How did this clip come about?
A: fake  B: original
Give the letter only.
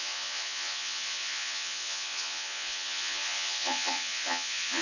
A